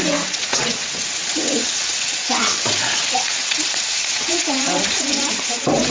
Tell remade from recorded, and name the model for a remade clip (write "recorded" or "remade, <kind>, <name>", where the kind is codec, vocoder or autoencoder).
remade, vocoder, WaveNeXt